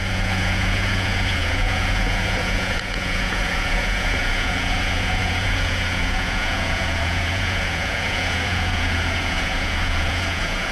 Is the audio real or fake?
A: fake